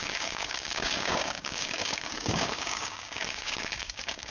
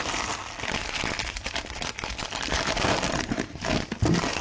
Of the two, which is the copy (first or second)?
first